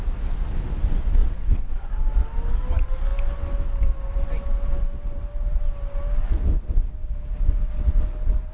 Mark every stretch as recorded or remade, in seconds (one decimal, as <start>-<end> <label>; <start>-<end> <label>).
0.0-1.2 recorded; 1.2-2.0 remade; 2.0-8.5 recorded